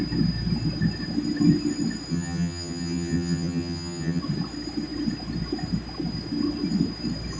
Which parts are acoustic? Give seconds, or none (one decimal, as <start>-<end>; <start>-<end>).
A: 0.0-2.1; 4.2-7.4